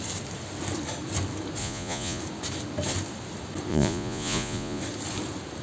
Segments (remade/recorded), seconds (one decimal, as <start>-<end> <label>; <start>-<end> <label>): 0.0-1.6 recorded; 1.6-2.2 remade; 2.2-3.7 recorded; 3.7-4.8 remade; 4.8-5.6 recorded